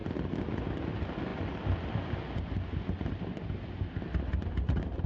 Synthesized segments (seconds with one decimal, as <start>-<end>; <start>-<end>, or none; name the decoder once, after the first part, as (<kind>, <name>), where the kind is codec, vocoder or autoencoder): none